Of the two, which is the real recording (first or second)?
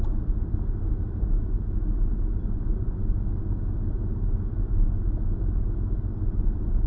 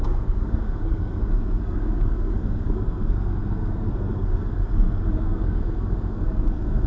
first